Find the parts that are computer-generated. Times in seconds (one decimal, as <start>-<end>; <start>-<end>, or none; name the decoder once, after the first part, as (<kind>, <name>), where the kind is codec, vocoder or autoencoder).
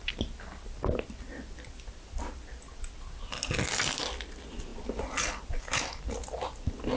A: none